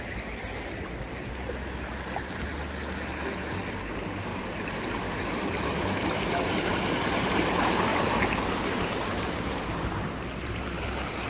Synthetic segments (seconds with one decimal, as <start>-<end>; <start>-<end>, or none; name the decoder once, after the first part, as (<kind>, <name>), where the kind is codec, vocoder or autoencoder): none